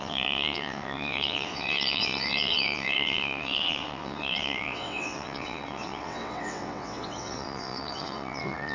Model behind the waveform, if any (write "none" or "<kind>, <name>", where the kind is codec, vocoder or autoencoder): vocoder, WaveNeXt